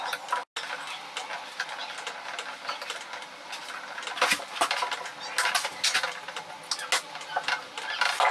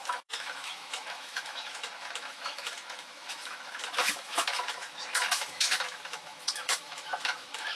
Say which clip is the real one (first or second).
first